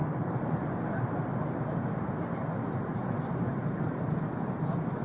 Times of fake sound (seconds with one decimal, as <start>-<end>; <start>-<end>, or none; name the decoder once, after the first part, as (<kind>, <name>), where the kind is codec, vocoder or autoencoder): 0.0-3.0 (vocoder, BigVGAN v2)

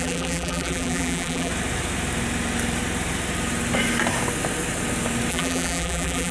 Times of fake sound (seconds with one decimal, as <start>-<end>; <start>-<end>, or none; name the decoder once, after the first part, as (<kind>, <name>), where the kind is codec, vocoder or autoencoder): 0.0-1.5 (vocoder, BigVGAN v2); 5.3-6.3